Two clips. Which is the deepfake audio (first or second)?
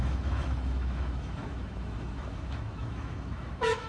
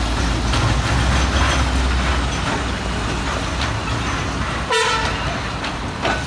first